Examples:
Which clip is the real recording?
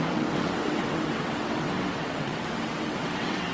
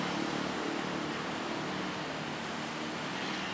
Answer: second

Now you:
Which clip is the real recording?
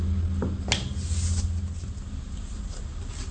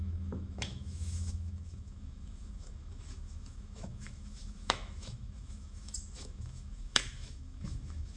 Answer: first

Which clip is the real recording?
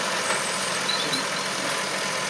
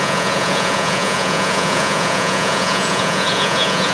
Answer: first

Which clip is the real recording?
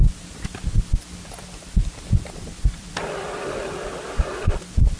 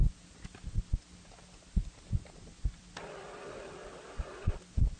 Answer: second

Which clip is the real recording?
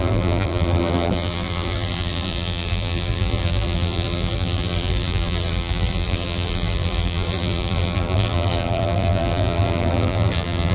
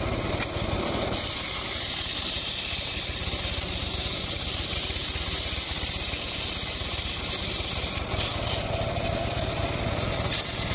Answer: second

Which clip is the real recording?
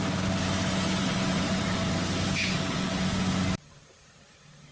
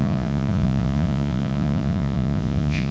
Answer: first